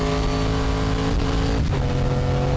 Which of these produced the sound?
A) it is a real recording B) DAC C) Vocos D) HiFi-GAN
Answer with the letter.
A